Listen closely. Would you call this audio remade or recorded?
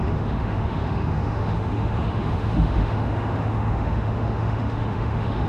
remade